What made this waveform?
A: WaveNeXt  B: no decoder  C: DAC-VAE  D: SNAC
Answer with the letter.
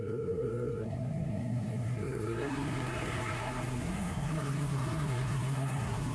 D